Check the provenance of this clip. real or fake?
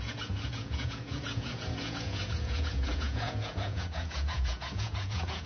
fake